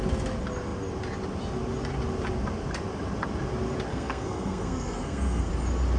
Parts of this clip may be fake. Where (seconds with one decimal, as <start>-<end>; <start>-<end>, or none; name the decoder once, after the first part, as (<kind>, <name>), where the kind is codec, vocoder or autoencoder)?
3.9-5.5 (codec, SNAC)